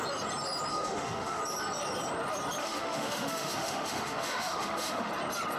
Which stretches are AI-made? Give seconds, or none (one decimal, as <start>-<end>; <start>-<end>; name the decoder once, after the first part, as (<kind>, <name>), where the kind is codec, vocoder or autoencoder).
0.7-1.4 (autoencoder, DAC-VAE); 2.6-5.1